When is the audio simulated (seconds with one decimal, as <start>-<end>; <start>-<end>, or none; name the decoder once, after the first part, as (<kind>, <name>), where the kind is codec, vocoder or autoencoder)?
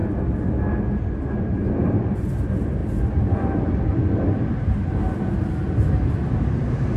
6.2-7.0 (vocoder, BigVGAN v2)